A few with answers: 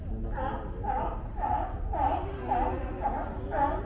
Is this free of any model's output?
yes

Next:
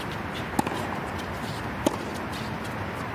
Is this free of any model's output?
yes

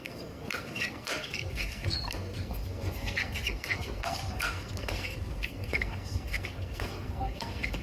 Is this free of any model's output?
no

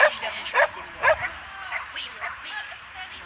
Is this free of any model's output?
no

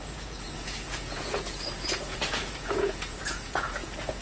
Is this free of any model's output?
no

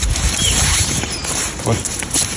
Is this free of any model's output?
no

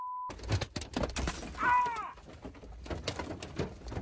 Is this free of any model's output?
yes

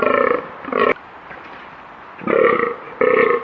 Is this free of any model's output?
yes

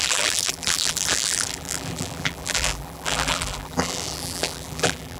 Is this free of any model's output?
no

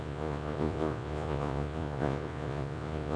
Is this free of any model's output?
no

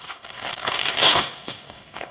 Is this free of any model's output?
no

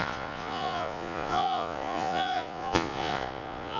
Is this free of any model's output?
no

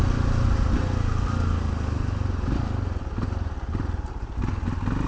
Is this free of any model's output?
yes